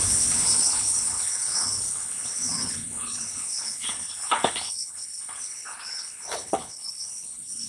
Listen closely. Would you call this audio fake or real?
fake